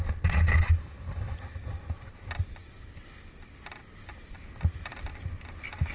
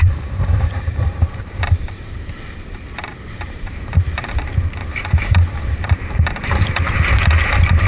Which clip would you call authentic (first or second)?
first